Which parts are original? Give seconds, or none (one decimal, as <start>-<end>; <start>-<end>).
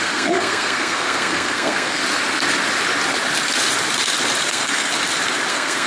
2.0-4.5; 4.9-5.5